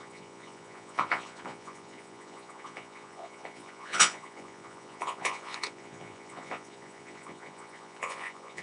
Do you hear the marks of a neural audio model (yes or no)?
yes